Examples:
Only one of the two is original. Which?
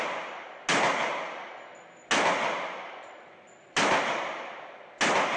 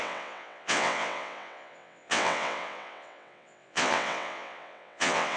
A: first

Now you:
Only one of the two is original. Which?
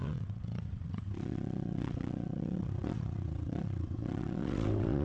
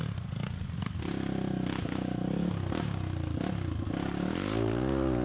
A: second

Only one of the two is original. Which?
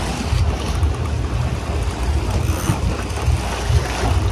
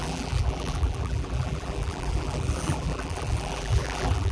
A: first